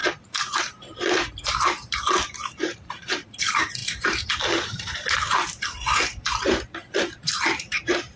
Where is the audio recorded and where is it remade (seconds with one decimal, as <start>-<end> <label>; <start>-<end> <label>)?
0.0-0.6 recorded; 0.6-8.2 remade